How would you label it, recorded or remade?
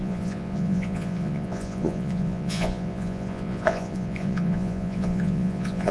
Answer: remade